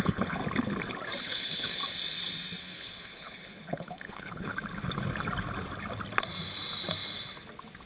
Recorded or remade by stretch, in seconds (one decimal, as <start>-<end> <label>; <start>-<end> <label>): 0.0-0.4 remade; 0.4-1.2 recorded; 1.2-1.8 remade; 1.8-2.6 recorded; 2.6-4.5 remade; 4.5-7.9 recorded

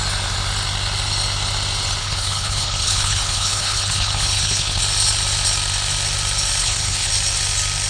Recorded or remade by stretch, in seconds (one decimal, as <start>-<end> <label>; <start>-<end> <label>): 0.0-2.0 recorded; 2.0-4.8 remade; 4.8-6.6 recorded; 6.6-7.1 remade; 7.1-7.9 recorded